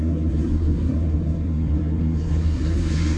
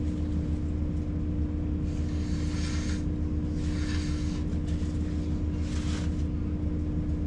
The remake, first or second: first